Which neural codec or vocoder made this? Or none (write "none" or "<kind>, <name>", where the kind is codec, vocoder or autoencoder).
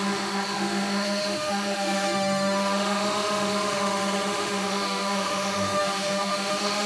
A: autoencoder, DAC-VAE